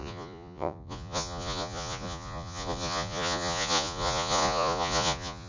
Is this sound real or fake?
fake